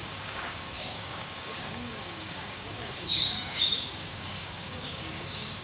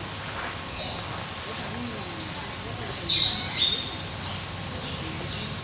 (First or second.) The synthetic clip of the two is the first